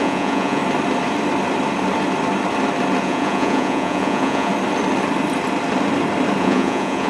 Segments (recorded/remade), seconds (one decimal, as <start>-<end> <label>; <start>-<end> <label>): 0.0-0.6 remade; 0.6-3.0 recorded; 3.0-4.5 remade; 4.5-6.4 recorded; 6.4-7.1 remade